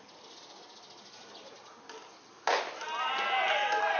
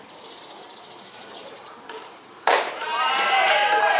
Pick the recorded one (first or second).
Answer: first